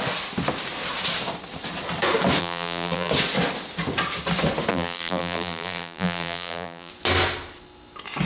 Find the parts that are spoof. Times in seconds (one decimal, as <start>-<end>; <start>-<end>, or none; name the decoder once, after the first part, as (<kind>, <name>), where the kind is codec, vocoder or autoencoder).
2.4-3.1 (vocoder, BigVGAN v2); 4.7-6.9